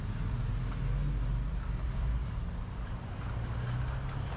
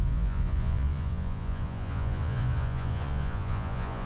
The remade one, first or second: second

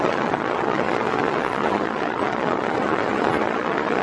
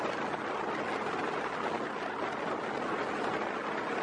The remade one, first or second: first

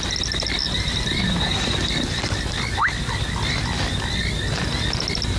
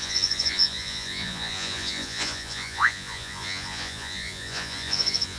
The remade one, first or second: second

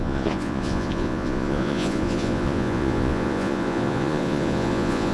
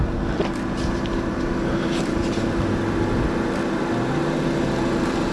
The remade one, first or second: first